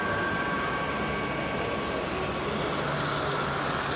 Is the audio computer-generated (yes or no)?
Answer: no